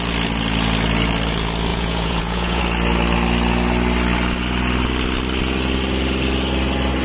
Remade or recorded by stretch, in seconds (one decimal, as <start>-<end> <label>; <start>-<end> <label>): 0.0-1.7 recorded; 1.7-2.6 remade; 2.6-7.0 recorded